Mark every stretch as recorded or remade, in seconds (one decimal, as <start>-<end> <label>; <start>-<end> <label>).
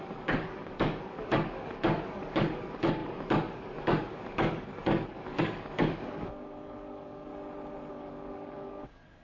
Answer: 0.0-7.3 remade; 7.3-7.9 recorded; 7.9-9.2 remade